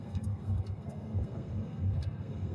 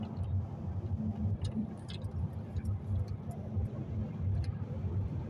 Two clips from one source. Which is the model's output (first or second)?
first